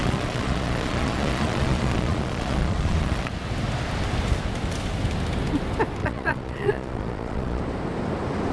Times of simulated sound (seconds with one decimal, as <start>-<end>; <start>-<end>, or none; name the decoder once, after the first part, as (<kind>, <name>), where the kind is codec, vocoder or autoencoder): 0.0-3.3 (vocoder, Vocos); 6.0-7.6